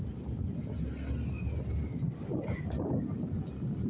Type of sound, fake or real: real